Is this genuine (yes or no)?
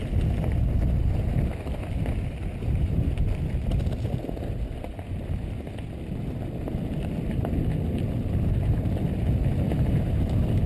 yes